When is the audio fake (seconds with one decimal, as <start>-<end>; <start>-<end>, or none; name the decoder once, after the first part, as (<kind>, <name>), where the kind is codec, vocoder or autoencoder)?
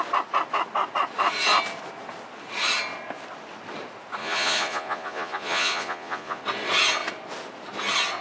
4.2-6.4 (vocoder, Vocos)